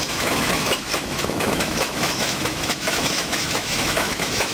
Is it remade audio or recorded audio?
remade